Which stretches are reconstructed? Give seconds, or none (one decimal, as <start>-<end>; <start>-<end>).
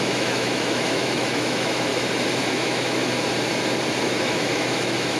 0.0-1.9; 2.5-3.0; 4.0-5.2